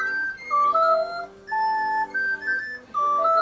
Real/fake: real